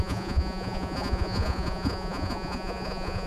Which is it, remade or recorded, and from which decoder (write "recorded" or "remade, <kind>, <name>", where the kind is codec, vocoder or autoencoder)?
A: remade, vocoder, Vocos